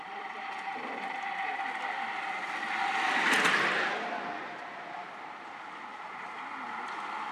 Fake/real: real